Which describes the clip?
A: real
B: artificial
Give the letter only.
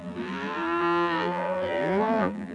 B